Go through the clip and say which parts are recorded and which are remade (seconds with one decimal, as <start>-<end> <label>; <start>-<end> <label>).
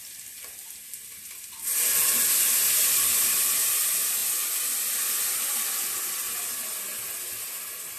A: 0.0-8.0 recorded